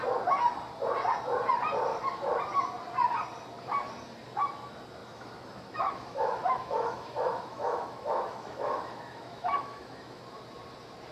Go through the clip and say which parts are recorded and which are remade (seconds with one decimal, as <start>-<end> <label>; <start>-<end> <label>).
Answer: 0.0-1.9 recorded; 1.9-2.4 remade; 2.4-5.0 recorded; 5.0-10.2 remade; 10.2-11.1 recorded